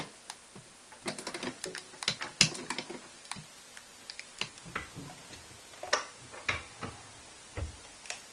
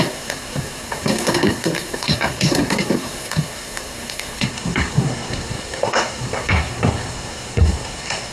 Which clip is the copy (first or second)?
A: second